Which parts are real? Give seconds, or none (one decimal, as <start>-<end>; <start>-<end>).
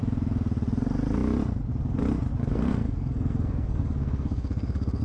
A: 0.0-2.4